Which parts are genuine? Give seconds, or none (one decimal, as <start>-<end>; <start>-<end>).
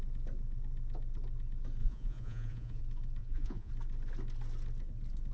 0.0-1.8; 2.8-3.2; 3.7-5.3